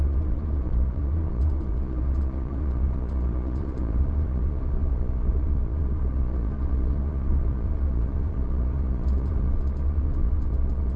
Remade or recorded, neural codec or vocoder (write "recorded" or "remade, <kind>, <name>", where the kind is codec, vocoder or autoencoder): remade, vocoder, Vocos